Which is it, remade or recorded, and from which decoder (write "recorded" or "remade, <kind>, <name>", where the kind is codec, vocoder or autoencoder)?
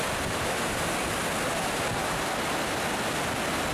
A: recorded